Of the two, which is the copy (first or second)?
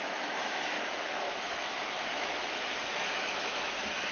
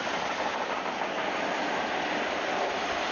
first